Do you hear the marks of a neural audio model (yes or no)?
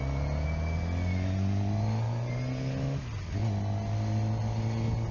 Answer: no